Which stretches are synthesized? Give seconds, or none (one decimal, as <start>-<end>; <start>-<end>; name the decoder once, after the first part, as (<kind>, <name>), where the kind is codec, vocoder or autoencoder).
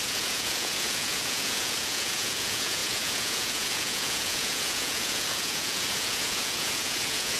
0.0-7.4 (vocoder, Vocos)